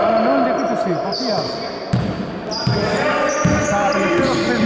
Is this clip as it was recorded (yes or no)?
yes